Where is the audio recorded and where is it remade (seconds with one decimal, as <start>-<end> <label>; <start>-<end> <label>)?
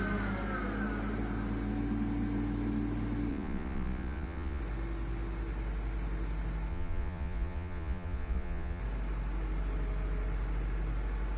0.0-3.3 recorded; 3.3-4.6 remade; 4.6-6.7 recorded; 6.7-8.8 remade; 8.8-11.4 recorded